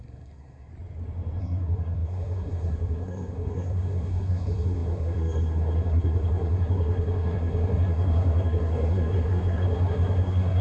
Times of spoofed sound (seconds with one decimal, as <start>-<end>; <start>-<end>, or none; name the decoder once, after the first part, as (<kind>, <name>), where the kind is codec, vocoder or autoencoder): 0.0-0.7 (codec, SNAC); 1.4-10.6